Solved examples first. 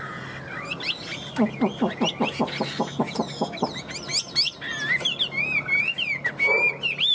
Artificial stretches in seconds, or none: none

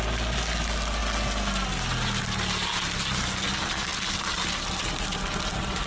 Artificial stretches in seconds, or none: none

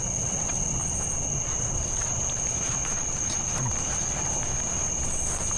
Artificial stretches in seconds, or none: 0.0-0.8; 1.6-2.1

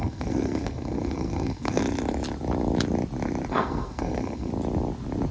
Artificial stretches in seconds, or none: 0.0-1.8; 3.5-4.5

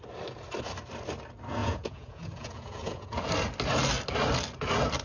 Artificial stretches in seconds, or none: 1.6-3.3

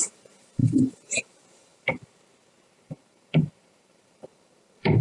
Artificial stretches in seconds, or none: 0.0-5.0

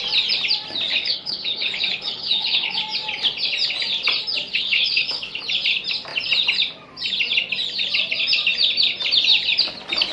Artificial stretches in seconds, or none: 0.9-2.8; 4.5-5.4

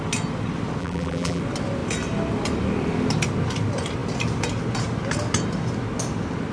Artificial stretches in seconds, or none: 0.8-1.4